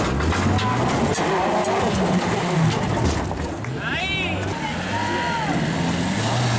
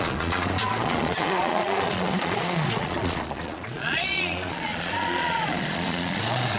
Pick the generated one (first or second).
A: second